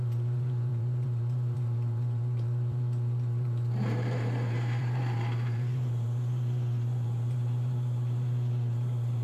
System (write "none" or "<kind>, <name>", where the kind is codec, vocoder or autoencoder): vocoder, BigVGAN v2